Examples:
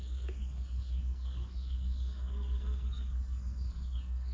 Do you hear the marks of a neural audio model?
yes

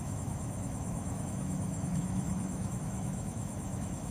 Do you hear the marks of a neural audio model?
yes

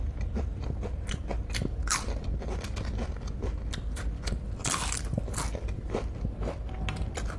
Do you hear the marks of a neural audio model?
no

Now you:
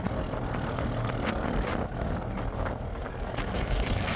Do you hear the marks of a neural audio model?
no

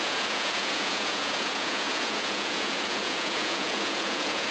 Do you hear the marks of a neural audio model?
yes